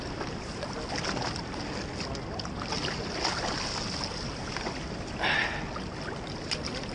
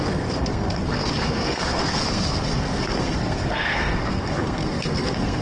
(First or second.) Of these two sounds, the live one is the first